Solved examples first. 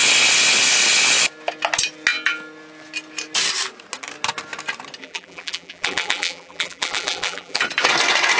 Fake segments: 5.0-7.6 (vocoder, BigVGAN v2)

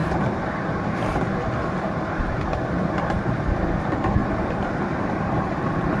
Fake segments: none

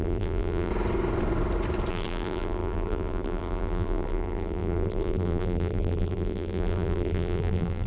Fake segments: 0.0-0.7 (vocoder, BigVGAN v2); 1.9-7.9

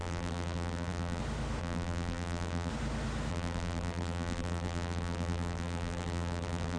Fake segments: 0.0-1.2 (vocoder, BigVGAN v2); 1.6-2.7; 3.3-6.8

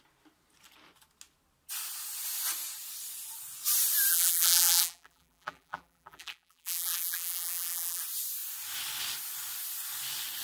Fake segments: 4.1-8.0 (vocoder, BigVGAN v2)

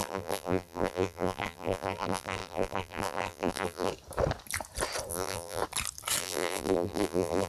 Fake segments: 0.0-3.9 (vocoder, BigVGAN v2); 5.1-5.6; 6.2-7.5

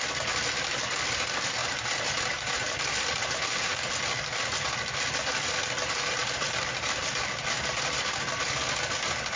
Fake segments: 1.6-3.7 (vocoder, BigVGAN v2); 6.2-7.4